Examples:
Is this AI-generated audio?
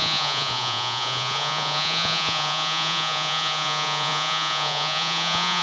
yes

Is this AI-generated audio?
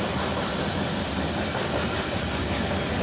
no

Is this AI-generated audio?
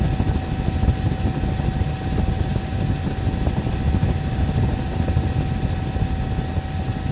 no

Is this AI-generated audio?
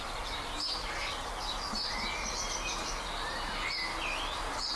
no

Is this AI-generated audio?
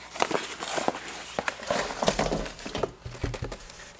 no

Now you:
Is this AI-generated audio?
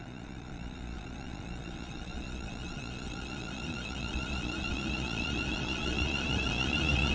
yes